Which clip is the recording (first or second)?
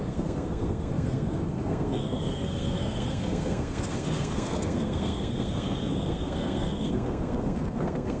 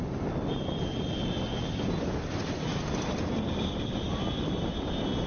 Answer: second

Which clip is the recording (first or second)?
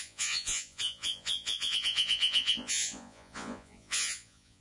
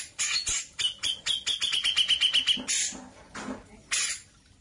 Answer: second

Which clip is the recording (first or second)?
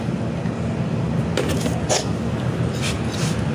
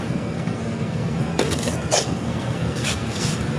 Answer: first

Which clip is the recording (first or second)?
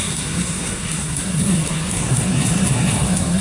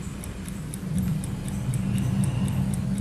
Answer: second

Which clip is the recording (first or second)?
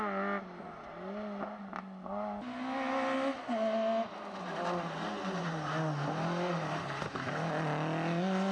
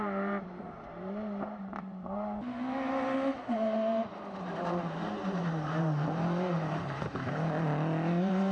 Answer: first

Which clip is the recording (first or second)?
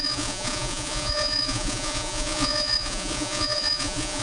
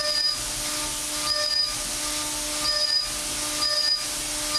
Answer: second